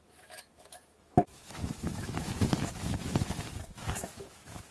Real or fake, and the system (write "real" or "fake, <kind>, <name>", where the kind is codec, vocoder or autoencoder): fake, autoencoder, DAC-VAE